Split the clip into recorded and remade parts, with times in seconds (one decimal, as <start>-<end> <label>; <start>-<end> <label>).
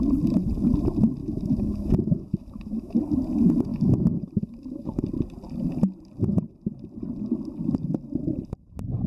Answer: 0.0-1.2 recorded; 1.2-3.0 remade; 3.0-3.7 recorded; 3.7-5.0 remade; 5.0-9.1 recorded